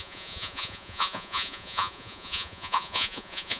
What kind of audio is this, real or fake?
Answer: fake